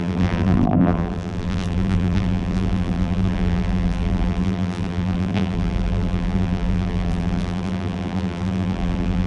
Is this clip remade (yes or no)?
yes